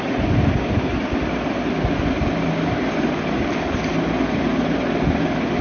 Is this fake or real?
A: real